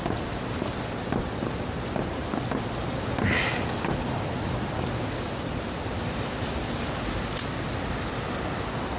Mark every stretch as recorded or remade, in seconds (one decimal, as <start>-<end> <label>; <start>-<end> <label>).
0.0-9.0 recorded